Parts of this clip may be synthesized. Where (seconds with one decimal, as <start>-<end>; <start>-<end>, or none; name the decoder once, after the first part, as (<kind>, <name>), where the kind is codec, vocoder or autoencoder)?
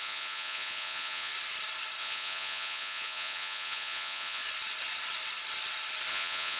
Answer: 0.0-1.3 (vocoder, Vocos); 2.0-4.4; 6.1-6.6